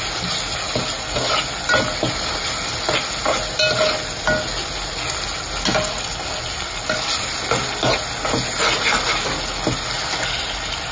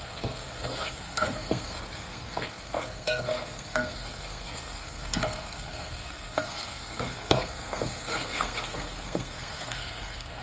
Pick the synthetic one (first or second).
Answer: second